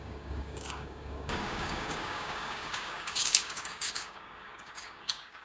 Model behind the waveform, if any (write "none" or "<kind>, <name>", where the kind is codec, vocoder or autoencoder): codec, DAC